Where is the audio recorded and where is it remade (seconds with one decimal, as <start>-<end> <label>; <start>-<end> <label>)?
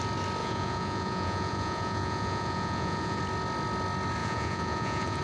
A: 0.0-0.4 recorded; 0.4-3.2 remade; 3.2-4.2 recorded; 4.2-5.2 remade